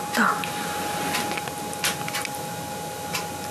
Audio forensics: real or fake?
real